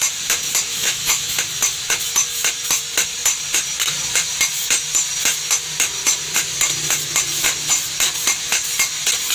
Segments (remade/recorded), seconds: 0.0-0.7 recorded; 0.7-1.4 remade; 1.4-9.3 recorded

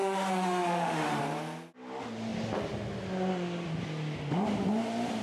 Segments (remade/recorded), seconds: 0.0-1.2 remade; 1.2-5.2 recorded

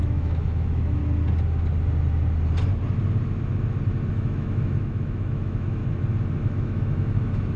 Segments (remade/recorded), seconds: 0.0-1.0 remade; 1.0-4.1 recorded; 4.1-5.8 remade; 5.8-6.4 recorded; 6.4-7.6 remade

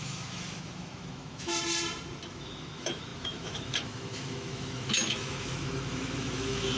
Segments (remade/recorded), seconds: 0.0-1.5 remade; 1.5-2.3 recorded; 2.3-6.8 remade